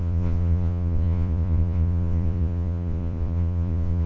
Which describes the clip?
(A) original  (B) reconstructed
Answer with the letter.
B